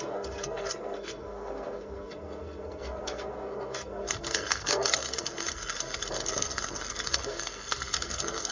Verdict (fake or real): fake